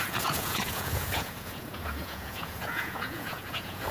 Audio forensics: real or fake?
fake